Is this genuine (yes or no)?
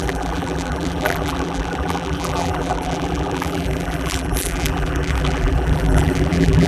no